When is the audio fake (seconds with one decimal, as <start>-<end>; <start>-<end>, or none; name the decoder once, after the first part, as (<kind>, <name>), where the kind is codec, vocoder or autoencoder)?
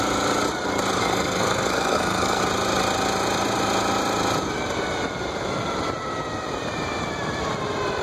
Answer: 1.0-2.4 (codec, SNAC)